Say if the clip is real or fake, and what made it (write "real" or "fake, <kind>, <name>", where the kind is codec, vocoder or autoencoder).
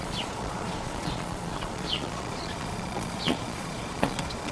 fake, vocoder, Vocos